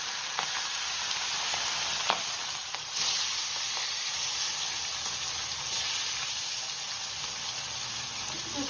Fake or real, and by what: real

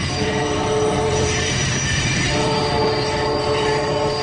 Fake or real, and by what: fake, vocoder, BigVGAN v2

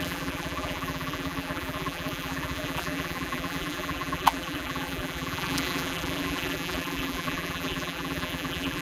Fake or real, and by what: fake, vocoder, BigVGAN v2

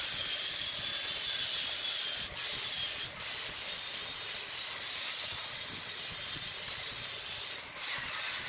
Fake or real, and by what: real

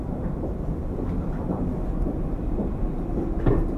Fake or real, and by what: fake, vocoder, BigVGAN v2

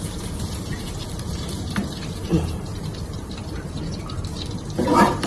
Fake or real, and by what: fake, vocoder, BigVGAN v2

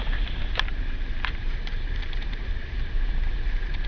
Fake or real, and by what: fake, vocoder, BigVGAN v2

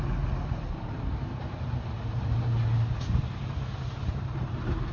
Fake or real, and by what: fake, vocoder, BigVGAN v2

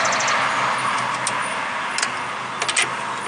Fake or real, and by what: real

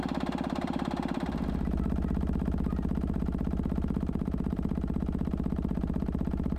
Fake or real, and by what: fake, vocoder, BigVGAN v2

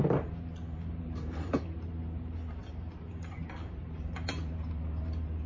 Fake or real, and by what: fake, vocoder, BigVGAN v2